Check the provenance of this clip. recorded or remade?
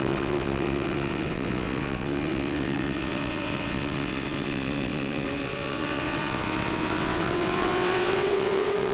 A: remade